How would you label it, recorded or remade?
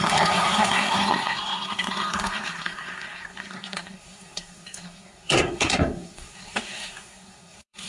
remade